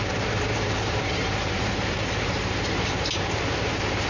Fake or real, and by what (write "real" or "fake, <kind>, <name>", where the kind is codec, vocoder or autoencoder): fake, vocoder, BigVGAN v2